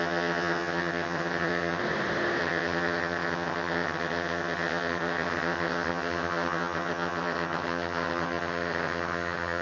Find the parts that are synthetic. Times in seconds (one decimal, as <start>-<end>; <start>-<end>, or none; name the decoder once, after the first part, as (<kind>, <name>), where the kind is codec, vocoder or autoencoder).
0.0-1.8 (vocoder, HiFi-GAN); 2.4-9.6